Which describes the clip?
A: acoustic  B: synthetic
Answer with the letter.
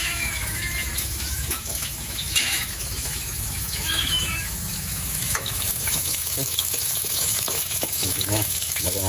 B